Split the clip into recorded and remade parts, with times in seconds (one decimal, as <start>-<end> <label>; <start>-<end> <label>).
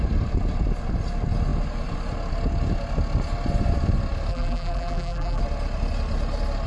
0.0-4.3 recorded; 4.3-5.4 remade; 5.4-6.7 recorded